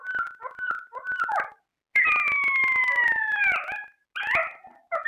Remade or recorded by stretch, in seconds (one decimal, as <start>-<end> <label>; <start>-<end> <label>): 0.0-5.1 recorded